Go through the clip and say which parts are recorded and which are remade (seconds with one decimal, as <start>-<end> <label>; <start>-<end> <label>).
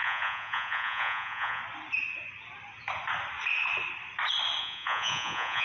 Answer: 0.0-1.6 remade; 1.6-4.6 recorded; 4.6-5.6 remade